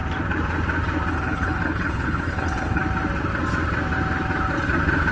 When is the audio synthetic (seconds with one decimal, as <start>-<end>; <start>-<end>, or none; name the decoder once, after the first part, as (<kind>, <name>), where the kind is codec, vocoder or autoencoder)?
1.1-2.8 (codec, HILCodec)

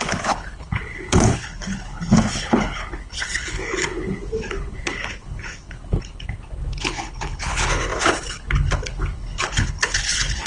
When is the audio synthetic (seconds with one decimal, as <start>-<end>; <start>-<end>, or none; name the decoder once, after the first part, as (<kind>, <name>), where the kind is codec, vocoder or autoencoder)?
0.0-10.5 (codec, HILCodec)

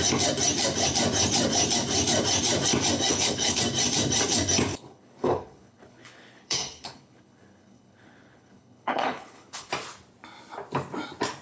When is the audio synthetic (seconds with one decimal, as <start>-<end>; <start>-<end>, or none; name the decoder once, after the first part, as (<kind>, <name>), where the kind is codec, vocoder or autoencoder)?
3.1-3.6 (codec, HILCodec); 4.7-9.7

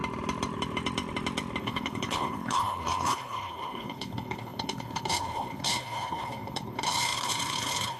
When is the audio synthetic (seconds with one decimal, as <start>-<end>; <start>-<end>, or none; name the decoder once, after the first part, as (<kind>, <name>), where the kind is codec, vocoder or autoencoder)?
1.6-8.0 (codec, HILCodec)

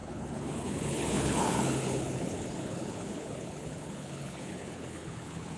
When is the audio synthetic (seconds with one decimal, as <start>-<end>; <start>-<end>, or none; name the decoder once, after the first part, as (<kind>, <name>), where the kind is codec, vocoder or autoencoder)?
0.0-5.6 (codec, HILCodec)

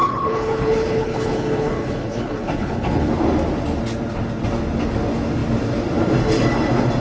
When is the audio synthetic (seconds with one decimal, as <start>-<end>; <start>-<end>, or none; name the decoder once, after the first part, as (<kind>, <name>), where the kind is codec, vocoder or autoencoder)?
0.0-3.1 (codec, HILCodec)

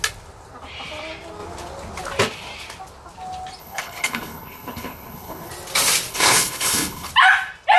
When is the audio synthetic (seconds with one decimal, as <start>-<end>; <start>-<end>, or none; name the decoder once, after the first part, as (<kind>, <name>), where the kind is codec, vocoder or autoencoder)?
3.6-5.5 (codec, HILCodec); 6.1-7.1